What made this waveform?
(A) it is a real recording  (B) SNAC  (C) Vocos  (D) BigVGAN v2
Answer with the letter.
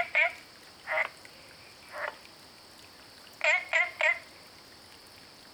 A